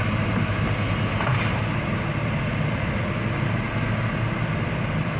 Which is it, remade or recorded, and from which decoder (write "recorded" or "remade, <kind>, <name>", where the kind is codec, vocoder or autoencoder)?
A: recorded